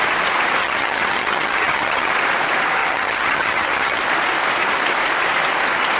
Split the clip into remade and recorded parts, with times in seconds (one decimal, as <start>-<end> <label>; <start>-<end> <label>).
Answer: 0.0-0.6 recorded; 0.6-2.1 remade; 2.1-2.8 recorded; 2.8-4.0 remade; 4.0-6.0 recorded